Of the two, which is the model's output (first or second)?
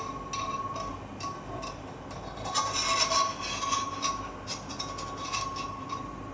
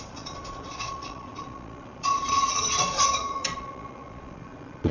second